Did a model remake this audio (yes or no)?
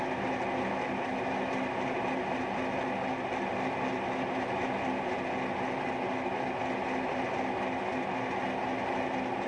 no